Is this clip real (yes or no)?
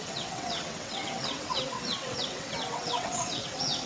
no